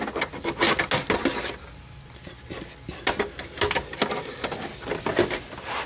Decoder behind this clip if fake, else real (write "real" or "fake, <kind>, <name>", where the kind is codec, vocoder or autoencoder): real